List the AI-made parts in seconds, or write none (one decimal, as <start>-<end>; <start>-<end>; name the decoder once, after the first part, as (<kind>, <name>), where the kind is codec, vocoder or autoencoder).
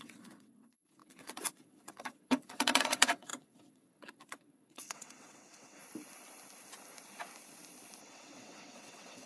0.0-5.8 (vocoder, WaveNeXt); 8.0-9.3